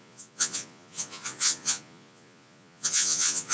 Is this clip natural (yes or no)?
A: no